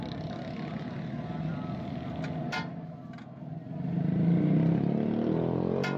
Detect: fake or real real